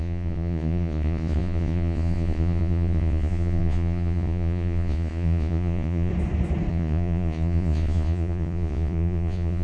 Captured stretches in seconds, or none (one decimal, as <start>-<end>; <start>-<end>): 6.1-6.7